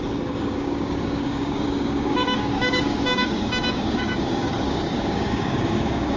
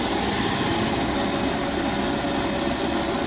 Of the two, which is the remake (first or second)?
first